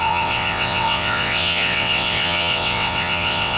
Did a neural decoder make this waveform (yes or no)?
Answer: yes